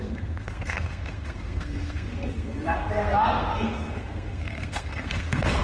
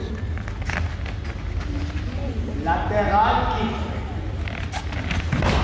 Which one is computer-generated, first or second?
first